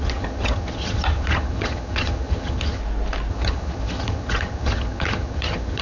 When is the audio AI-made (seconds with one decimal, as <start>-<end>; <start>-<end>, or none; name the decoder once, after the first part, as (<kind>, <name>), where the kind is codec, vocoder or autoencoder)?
0.0-2.8 (vocoder, HiFi-GAN); 3.3-5.8